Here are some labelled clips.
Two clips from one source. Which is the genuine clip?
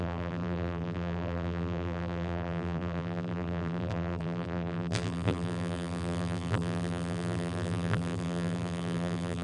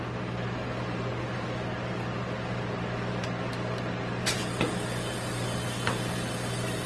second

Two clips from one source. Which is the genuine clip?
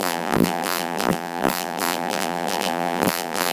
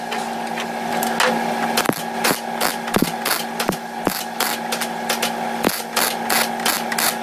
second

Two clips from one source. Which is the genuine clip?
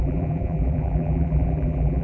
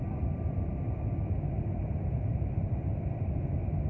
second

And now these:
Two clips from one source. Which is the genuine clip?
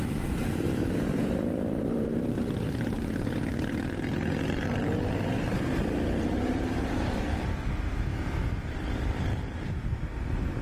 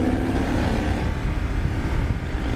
second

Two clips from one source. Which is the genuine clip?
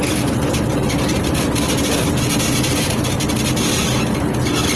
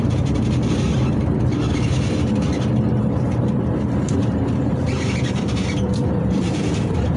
first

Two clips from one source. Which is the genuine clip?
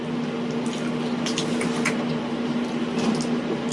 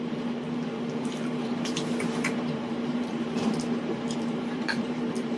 first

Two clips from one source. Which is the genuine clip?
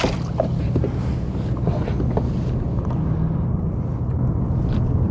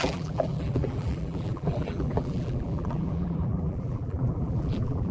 first